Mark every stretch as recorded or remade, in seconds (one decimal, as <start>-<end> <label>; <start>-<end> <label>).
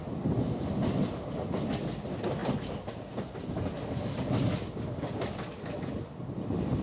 0.0-6.8 recorded